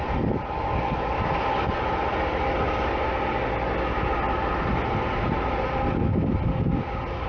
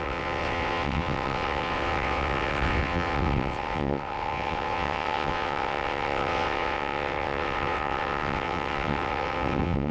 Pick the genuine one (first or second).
first